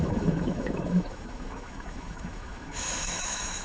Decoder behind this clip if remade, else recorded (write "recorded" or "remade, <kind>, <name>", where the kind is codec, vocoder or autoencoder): remade, autoencoder, DAC-VAE